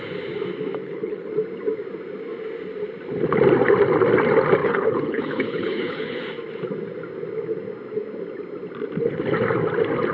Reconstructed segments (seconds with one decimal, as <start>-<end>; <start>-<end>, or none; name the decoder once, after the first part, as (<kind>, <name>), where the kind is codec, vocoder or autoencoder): 0.8-1.3 (codec, HILCodec); 4.6-6.2